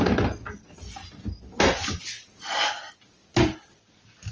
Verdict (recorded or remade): recorded